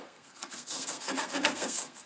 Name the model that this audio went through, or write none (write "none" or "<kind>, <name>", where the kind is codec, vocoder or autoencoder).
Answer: codec, SNAC